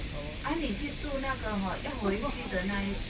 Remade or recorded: recorded